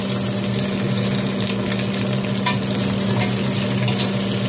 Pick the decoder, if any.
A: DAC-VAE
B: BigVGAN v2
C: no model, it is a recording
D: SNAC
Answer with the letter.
C